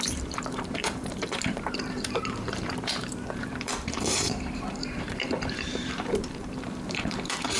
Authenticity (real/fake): fake